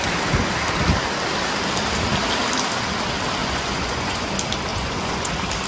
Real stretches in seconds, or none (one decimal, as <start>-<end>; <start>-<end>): 0.0-3.4; 4.3-4.7; 5.3-5.7